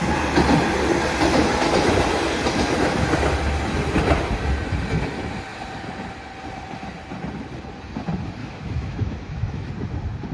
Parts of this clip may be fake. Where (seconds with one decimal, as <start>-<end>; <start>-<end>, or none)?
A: 8.4-9.7